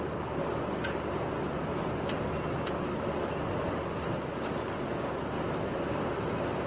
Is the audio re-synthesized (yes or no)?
no